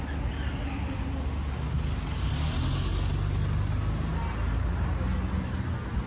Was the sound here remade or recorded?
recorded